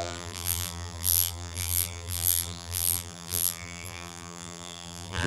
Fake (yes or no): yes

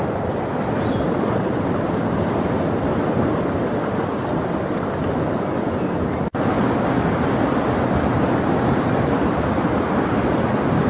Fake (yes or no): no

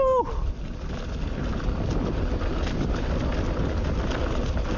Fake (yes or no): no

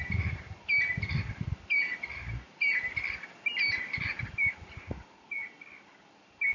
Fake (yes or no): no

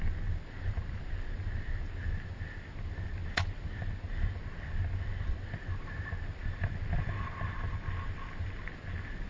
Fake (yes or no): no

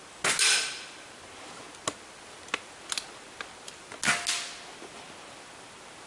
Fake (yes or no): no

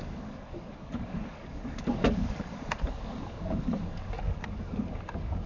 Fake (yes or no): yes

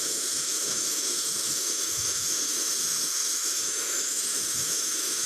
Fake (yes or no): yes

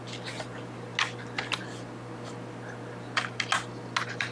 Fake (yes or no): no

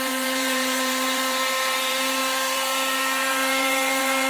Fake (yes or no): yes